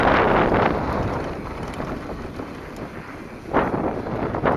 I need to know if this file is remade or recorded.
recorded